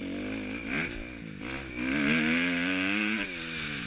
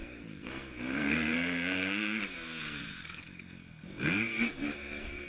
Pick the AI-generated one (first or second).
second